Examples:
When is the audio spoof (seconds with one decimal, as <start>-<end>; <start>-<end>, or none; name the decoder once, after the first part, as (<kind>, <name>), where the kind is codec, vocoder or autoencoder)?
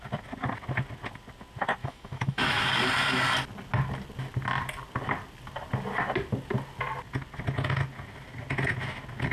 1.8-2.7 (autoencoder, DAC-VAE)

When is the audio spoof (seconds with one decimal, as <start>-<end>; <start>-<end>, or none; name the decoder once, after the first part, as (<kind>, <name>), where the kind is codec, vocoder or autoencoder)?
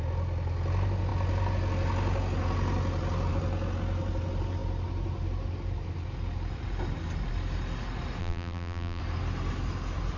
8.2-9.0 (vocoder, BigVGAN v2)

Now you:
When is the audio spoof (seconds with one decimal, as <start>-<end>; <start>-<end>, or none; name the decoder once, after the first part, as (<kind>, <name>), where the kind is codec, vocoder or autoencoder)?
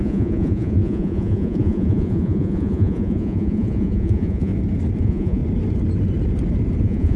0.0-4.5 (vocoder, Vocos); 5.0-5.4; 6.8-7.2